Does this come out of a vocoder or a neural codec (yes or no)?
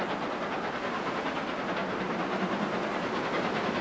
no